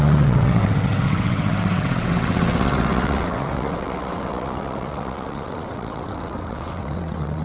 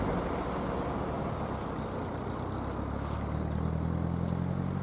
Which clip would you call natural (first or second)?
second